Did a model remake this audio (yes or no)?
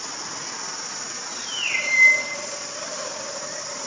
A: no